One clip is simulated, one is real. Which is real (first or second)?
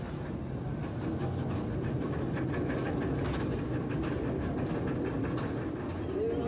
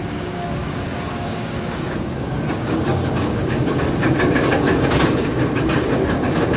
first